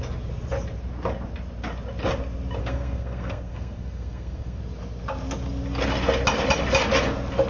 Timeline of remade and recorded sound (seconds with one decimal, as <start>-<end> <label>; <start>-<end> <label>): 0.0-2.6 recorded; 2.6-4.6 remade; 4.6-7.5 recorded